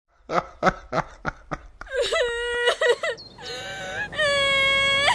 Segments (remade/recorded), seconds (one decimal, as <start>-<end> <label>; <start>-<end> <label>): 0.0-1.6 recorded; 1.6-2.2 remade; 2.2-5.1 recorded

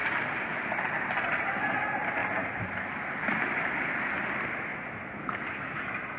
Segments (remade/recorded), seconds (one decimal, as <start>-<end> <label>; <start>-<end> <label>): 0.0-0.7 remade; 0.7-6.2 recorded

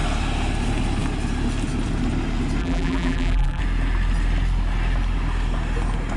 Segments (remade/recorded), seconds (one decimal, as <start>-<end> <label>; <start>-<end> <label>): 0.0-2.6 recorded; 2.6-3.6 remade; 3.6-6.2 recorded

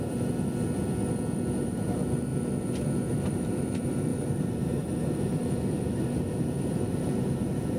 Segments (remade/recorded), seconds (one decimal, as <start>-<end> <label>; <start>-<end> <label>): 0.0-0.5 remade; 0.5-1.6 recorded; 1.6-2.3 remade; 2.3-3.1 recorded; 3.1-7.8 remade

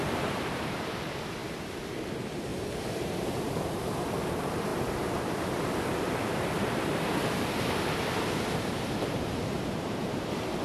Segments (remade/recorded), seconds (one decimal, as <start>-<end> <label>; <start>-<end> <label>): 0.0-1.4 remade; 1.4-2.1 recorded; 2.1-4.7 remade; 4.7-8.3 recorded; 8.3-10.6 remade

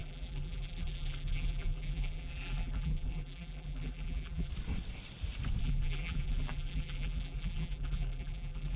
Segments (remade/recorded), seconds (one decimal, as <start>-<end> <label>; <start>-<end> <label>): 0.0-4.5 remade; 4.5-5.6 recorded; 5.6-8.8 remade